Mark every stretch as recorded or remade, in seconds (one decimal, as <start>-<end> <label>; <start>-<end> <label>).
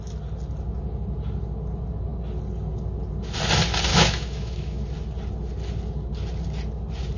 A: 0.0-3.9 recorded; 3.9-4.8 remade; 4.8-7.2 recorded